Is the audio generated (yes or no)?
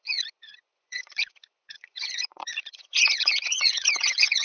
yes